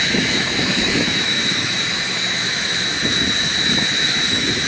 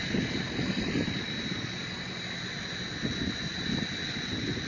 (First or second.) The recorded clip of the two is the second